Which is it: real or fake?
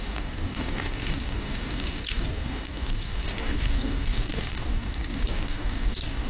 fake